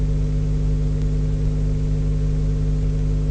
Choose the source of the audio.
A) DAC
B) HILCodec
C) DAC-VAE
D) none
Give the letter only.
D